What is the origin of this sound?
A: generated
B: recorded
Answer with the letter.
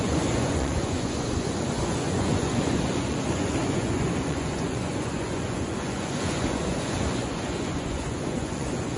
A